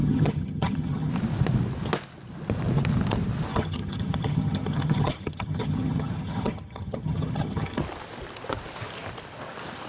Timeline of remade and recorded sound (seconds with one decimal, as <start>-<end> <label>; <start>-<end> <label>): 0.0-1.1 remade; 1.1-3.5 recorded; 3.5-7.8 remade; 7.8-9.9 recorded

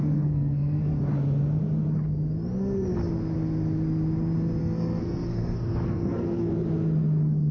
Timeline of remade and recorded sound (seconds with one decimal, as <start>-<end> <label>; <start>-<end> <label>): 0.0-1.0 remade; 1.0-4.6 recorded; 4.6-6.5 remade; 6.5-7.5 recorded